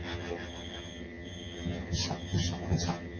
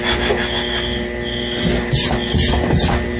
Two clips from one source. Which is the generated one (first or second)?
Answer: first